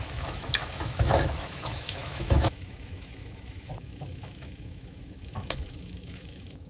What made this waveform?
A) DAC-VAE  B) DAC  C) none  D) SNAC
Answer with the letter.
A